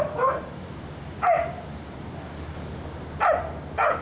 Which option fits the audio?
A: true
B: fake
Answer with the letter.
A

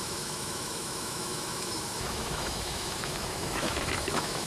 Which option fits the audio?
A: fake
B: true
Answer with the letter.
A